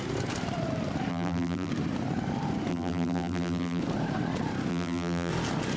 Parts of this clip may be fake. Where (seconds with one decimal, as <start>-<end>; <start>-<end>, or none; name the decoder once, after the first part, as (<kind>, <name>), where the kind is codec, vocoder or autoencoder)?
1.1-1.7 (vocoder, BigVGAN v2); 2.7-3.8; 4.7-5.3